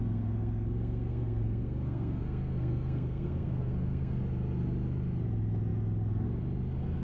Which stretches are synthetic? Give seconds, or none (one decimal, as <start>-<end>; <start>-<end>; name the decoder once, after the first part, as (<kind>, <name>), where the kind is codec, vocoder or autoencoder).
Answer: 0.0-4.2 (codec, SNAC)